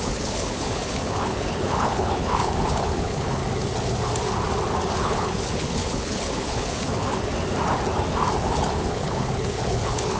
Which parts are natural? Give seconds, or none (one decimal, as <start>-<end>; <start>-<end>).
3.4-5.0; 7.3-8.4